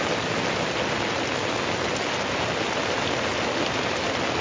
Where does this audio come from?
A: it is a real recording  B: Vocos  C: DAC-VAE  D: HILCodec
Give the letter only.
A